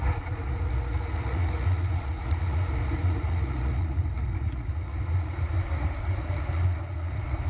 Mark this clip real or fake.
fake